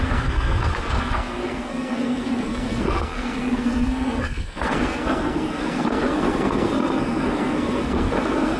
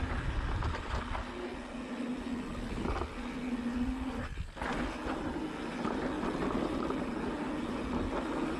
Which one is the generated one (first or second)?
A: first